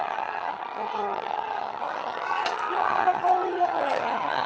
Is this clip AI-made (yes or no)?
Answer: yes